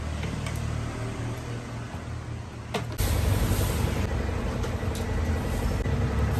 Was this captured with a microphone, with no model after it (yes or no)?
yes